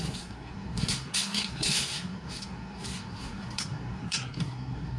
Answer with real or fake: fake